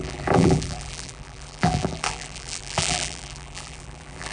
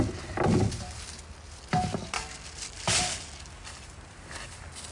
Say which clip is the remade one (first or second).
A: first